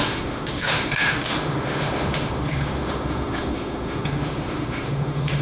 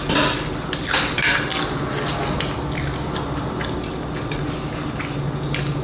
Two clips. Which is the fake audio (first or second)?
first